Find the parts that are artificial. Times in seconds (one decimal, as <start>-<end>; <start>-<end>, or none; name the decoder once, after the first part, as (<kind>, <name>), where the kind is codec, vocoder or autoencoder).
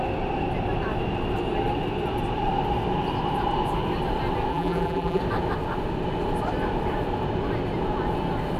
4.5-5.2 (vocoder, BigVGAN v2)